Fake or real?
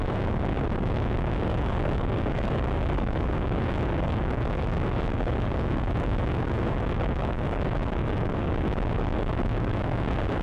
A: fake